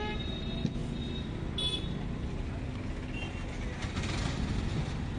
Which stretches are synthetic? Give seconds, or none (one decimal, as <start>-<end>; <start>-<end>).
none